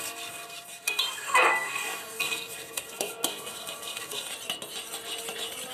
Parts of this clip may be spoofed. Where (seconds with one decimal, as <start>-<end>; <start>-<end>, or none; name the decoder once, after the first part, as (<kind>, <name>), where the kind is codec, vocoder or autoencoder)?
0.0-4.3 (codec, SNAC)